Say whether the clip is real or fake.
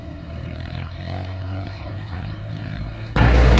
fake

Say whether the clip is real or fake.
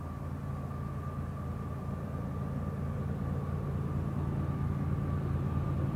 real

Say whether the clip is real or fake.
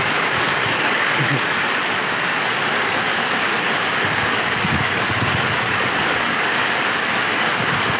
fake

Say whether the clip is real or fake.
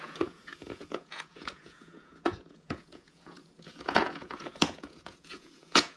fake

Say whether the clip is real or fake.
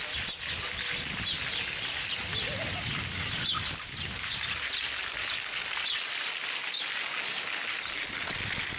real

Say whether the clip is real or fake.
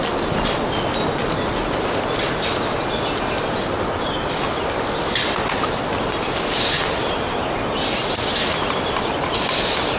real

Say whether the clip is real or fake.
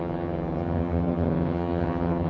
fake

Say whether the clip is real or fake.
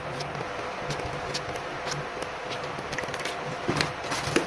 real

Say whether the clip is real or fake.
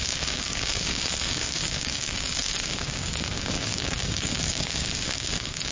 fake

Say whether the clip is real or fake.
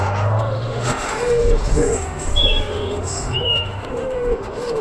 fake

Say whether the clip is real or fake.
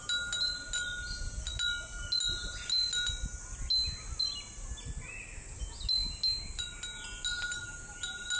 real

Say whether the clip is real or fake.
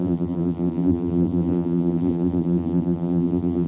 fake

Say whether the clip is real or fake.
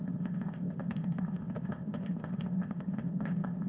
fake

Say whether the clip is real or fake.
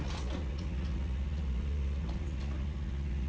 fake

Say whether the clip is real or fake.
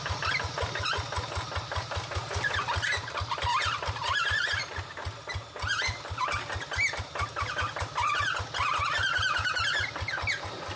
real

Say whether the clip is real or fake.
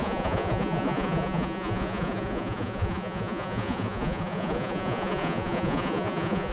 fake